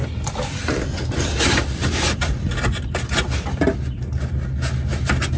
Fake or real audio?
real